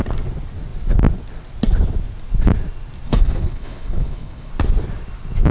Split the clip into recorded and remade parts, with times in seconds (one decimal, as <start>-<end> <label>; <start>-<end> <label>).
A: 0.0-3.1 recorded; 3.1-4.5 remade; 4.5-5.5 recorded